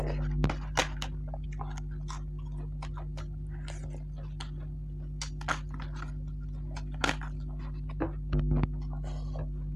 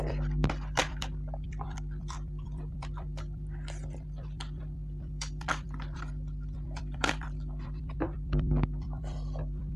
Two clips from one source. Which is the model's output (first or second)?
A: second